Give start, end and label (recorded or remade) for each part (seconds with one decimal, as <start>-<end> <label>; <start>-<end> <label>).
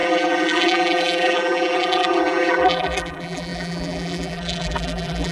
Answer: 0.0-5.3 remade